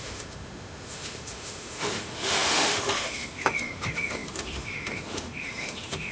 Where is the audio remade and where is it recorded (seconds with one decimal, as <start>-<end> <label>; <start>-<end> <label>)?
0.0-6.1 remade